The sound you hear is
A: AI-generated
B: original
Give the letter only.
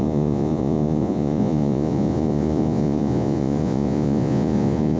A